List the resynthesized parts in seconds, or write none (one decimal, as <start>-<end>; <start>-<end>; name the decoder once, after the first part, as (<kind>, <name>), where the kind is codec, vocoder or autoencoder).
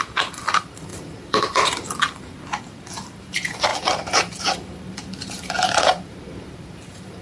0.0-7.2 (vocoder, BigVGAN v2)